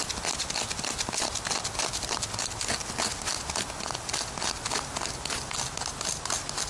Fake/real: real